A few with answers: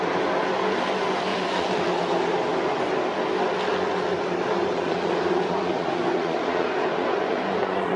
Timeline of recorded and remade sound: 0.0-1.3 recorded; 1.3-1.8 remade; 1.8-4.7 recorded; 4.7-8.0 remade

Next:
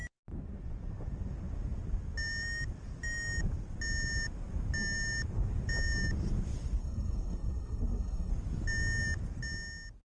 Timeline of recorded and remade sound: 0.0-6.8 recorded; 6.8-8.3 remade; 8.3-10.2 recorded

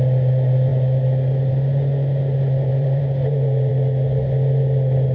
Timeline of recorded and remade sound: 0.0-2.7 recorded; 2.7-3.7 remade; 3.7-5.1 recorded

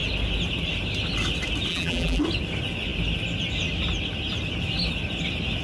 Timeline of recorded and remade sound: 0.0-1.7 recorded; 1.7-2.2 remade; 2.2-5.6 recorded

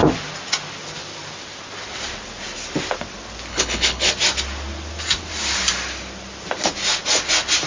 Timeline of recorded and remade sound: 0.0-3.5 recorded; 3.5-4.1 remade; 4.1-7.7 recorded

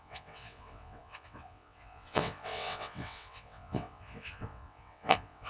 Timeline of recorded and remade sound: 0.0-5.5 remade